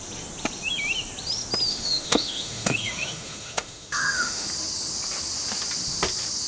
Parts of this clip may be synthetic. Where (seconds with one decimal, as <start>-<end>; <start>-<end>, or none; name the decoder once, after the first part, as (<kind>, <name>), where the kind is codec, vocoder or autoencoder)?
1.7-4.5 (autoencoder, DAC-VAE)

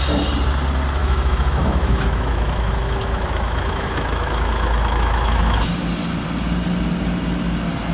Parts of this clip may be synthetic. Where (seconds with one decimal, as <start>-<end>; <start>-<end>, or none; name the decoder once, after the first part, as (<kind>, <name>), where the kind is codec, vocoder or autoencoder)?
1.0-5.7 (autoencoder, DAC-VAE)